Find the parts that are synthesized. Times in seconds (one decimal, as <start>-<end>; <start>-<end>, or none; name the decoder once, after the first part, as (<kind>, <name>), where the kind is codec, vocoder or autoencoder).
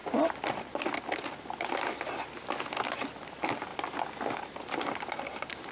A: 0.0-1.0 (vocoder, BigVGAN v2); 3.7-4.6